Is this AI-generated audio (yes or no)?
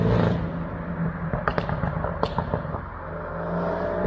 no